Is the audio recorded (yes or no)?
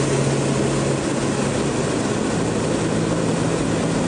yes